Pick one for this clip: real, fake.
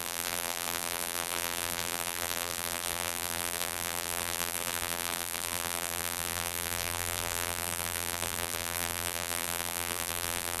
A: fake